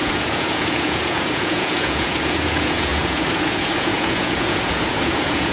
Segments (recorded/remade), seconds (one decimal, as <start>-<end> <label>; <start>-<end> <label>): 0.0-5.5 remade